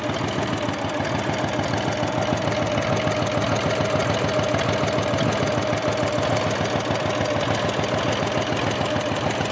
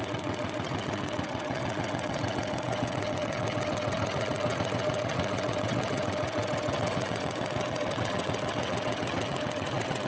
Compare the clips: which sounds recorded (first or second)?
first